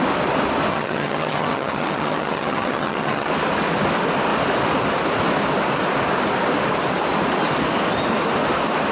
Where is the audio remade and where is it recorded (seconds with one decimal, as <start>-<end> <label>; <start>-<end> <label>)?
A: 0.0-0.7 recorded; 0.7-3.3 remade; 3.3-8.9 recorded